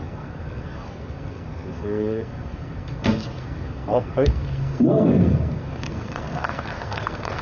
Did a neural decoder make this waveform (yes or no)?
yes